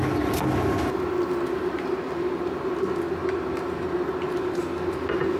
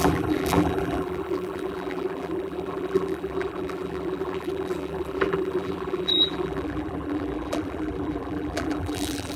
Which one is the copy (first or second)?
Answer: second